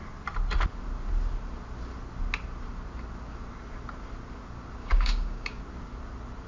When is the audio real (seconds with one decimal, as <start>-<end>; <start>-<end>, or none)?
0.0-4.8; 5.6-6.5